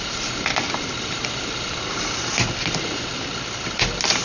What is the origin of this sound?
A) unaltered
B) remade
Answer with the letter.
A